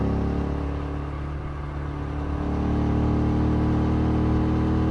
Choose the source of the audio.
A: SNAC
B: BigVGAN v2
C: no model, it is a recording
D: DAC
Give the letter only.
C